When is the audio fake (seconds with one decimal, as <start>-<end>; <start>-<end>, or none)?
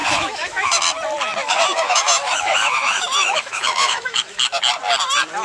0.0-0.8; 1.4-4.6